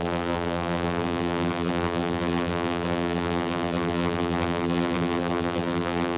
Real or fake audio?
fake